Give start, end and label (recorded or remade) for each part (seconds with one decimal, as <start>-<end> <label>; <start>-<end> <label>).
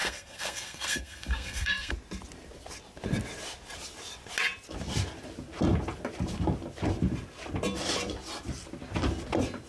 0.0-1.9 remade; 1.9-9.7 recorded